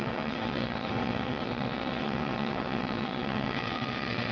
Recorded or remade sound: remade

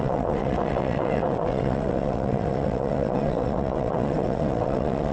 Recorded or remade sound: remade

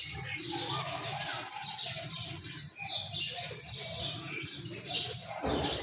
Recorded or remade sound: recorded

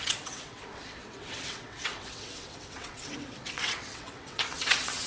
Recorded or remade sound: remade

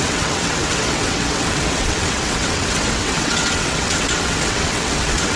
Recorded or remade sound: remade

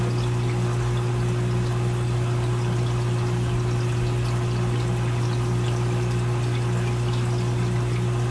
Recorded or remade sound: recorded